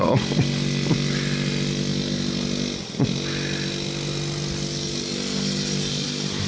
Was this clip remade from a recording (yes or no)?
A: no